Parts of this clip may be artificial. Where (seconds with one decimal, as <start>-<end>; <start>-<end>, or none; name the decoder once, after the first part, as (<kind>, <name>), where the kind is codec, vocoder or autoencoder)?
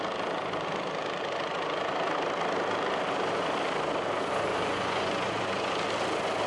4.5-5.7 (vocoder, Vocos)